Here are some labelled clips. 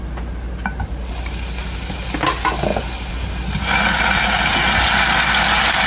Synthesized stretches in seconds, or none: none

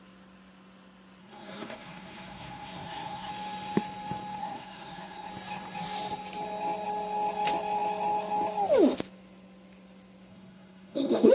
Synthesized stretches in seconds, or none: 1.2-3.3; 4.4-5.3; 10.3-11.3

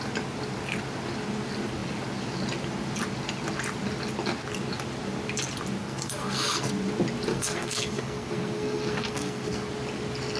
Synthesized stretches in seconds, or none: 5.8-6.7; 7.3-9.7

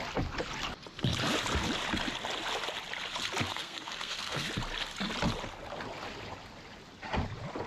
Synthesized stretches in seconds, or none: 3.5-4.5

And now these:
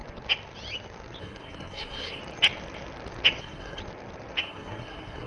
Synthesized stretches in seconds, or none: 1.2-2.2; 3.4-3.8; 4.4-5.3

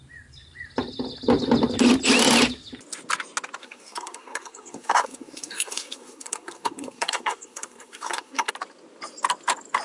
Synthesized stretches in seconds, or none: 3.6-8.5

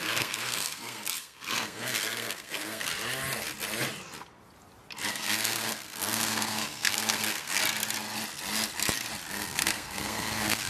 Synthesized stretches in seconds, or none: 0.0-2.9; 5.1-7.6; 9.3-10.7